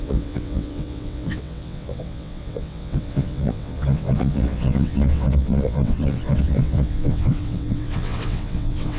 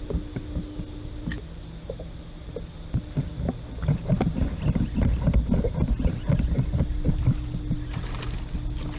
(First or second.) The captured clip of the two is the second